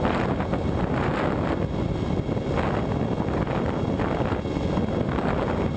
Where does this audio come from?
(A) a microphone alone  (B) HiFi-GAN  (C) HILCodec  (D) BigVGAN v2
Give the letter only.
A